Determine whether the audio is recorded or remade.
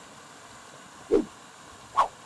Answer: recorded